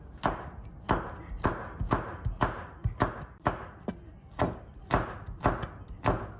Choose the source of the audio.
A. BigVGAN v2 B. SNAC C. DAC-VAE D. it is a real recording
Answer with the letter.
D